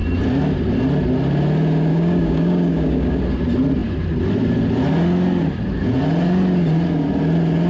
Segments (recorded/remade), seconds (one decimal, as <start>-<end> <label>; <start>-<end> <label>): 0.0-1.9 recorded; 1.9-3.2 remade; 3.2-7.7 recorded

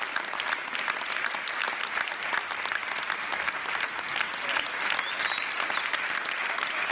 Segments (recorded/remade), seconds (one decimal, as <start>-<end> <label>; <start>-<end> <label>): 0.0-6.9 recorded

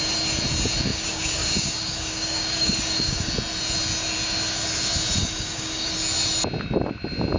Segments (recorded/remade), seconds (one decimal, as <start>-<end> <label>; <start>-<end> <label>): 0.0-0.9 recorded; 0.9-3.3 remade; 3.3-5.2 recorded; 5.2-5.9 remade; 5.9-7.4 recorded

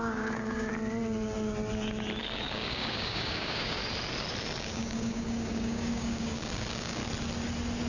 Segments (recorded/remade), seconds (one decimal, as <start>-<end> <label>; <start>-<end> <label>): 0.0-0.7 remade; 0.7-2.2 recorded; 2.2-3.8 remade; 3.8-4.6 recorded; 4.6-7.0 remade; 7.0-7.9 recorded